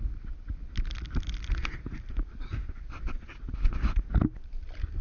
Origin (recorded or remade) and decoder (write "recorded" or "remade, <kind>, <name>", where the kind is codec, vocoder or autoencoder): recorded